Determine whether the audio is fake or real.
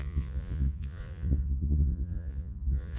fake